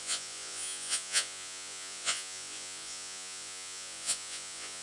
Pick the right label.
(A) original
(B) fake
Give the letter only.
B